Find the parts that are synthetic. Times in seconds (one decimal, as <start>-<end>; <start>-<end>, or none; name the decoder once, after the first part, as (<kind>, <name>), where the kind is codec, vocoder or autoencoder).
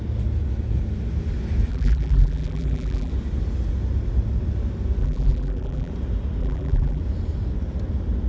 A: 1.7-3.1 (vocoder, BigVGAN v2); 5.0-5.9; 6.4-7.0